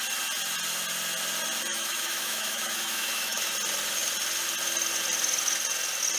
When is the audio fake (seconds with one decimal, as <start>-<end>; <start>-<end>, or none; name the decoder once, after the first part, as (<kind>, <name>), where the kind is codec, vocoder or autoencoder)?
1.7-3.5 (autoencoder, DAC-VAE)